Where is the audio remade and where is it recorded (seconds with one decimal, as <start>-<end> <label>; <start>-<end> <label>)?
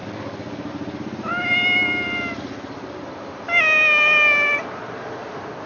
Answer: 0.0-5.7 recorded